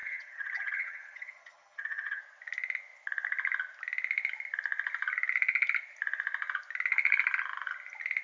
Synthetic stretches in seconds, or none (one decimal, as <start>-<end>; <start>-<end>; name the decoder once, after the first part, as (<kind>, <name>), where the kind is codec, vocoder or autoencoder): 0.0-2.2 (vocoder, HiFi-GAN)